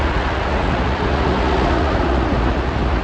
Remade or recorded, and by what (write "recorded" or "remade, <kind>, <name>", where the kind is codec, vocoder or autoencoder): remade, vocoder, Vocos